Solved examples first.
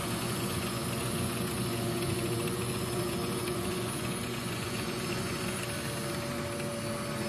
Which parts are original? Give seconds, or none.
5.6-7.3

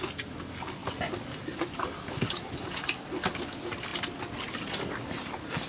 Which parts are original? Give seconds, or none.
0.0-5.7